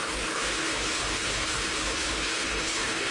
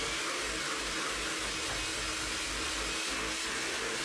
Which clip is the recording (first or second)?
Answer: second